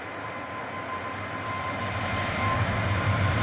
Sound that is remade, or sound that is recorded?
recorded